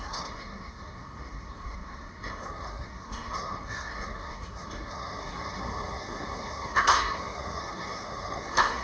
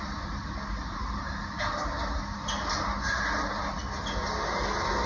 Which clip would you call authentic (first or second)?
second